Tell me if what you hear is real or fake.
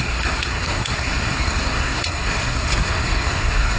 fake